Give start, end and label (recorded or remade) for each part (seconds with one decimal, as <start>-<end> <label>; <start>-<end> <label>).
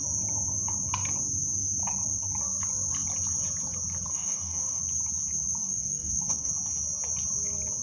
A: 0.0-4.1 recorded; 4.1-4.8 remade; 4.8-5.6 recorded; 5.6-6.5 remade; 6.5-7.8 recorded